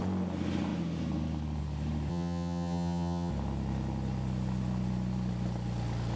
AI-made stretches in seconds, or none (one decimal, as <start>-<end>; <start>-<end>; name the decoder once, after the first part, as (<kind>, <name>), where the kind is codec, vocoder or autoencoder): 2.1-3.3 (vocoder, HiFi-GAN)